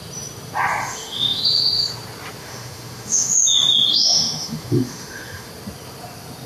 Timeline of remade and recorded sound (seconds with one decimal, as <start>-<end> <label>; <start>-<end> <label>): 0.0-0.8 recorded; 0.8-1.4 remade; 1.4-2.4 recorded; 2.4-3.4 remade; 3.4-3.9 recorded; 3.9-5.5 remade; 5.5-6.5 recorded